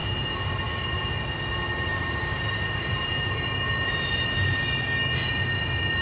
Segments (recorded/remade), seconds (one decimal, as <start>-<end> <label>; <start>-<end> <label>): 0.0-1.2 remade; 1.2-1.9 recorded; 1.9-5.1 remade; 5.1-6.0 recorded